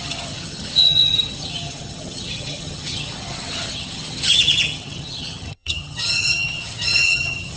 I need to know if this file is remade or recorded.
remade